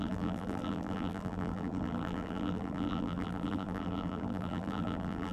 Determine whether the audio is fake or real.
fake